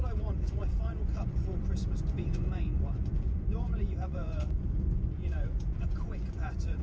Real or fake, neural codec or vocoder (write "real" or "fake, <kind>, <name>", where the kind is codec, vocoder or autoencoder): fake, vocoder, Vocos